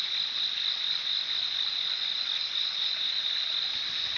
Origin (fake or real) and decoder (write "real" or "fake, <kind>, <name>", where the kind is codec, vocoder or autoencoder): real